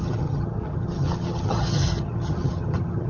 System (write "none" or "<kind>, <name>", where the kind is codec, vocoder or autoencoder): vocoder, HiFi-GAN